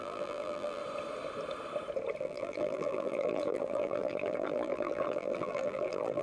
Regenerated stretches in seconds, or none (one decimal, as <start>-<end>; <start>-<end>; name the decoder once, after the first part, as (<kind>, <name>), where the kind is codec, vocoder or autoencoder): 0.0-0.8 (vocoder, BigVGAN v2); 2.2-6.2